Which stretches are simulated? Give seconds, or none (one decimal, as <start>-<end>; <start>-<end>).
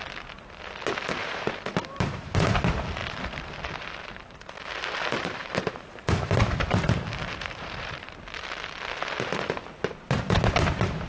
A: 1.2-2.3; 3.0-8.1